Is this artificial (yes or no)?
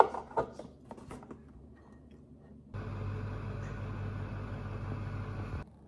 no